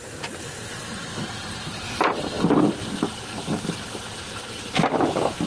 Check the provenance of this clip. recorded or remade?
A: recorded